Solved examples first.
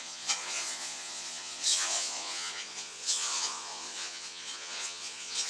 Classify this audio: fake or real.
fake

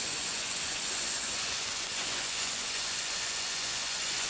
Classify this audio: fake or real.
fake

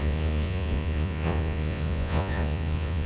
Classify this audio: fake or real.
fake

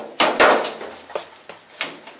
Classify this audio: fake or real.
real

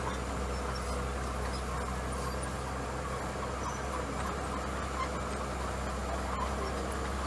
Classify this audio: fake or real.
real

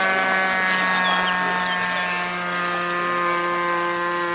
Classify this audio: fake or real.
real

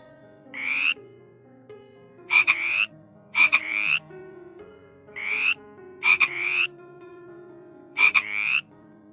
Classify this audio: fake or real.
fake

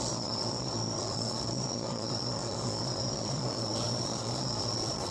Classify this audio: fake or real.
fake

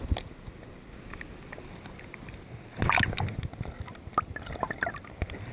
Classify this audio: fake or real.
real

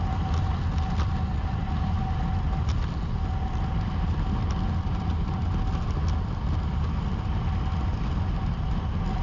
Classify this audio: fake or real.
real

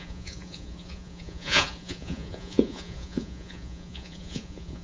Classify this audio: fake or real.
fake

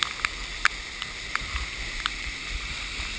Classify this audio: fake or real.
real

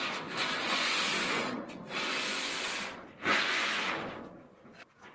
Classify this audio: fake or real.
fake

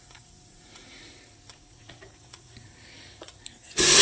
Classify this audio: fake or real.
fake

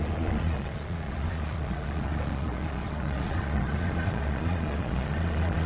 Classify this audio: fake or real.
fake